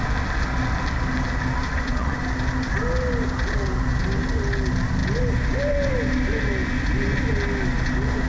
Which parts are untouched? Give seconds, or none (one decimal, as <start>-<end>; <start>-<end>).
0.0-1.7; 2.2-8.3

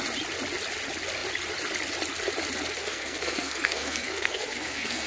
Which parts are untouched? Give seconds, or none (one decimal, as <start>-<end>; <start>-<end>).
0.0-2.8

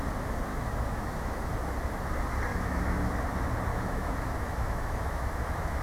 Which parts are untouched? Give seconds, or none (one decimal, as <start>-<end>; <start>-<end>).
0.0-0.5; 1.5-2.5; 3.1-3.7

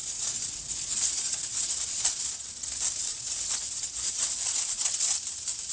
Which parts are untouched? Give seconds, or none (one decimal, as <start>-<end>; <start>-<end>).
2.5-3.1; 5.0-5.7

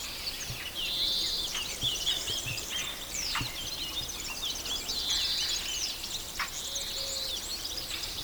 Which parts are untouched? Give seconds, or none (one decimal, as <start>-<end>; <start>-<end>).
0.0-1.9; 3.4-7.5